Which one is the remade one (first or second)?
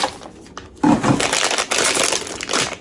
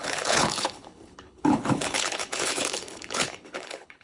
second